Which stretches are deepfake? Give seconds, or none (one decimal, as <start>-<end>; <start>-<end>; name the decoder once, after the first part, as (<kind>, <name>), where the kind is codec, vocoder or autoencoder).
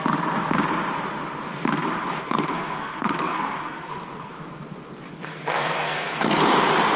2.2-4.3 (codec, SNAC); 5.1-6.4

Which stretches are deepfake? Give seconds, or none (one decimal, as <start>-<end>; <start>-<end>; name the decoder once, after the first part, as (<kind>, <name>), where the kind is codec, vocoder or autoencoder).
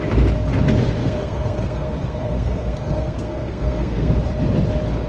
1.0-4.1 (codec, SNAC)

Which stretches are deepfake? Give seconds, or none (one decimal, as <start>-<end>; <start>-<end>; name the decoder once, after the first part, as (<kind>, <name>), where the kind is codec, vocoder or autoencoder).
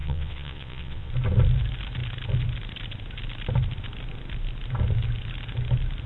0.0-1.1 (vocoder, WaveNeXt)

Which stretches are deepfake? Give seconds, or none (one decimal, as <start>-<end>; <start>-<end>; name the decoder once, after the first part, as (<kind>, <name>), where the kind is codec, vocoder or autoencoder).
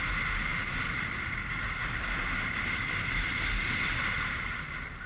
none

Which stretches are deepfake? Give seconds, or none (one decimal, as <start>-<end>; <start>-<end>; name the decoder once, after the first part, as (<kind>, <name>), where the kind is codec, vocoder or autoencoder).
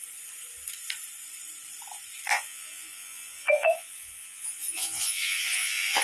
2.3-6.0 (vocoder, Vocos)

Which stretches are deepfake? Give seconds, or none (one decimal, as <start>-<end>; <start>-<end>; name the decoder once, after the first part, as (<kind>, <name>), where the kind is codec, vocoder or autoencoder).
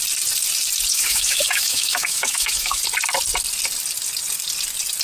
0.9-2.8 (autoencoder, DAC-VAE)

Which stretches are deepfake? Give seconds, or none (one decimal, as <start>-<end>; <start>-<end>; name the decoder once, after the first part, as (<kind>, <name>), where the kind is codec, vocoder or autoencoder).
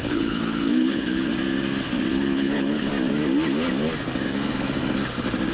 0.0-1.3 (codec, HILCodec); 2.1-2.9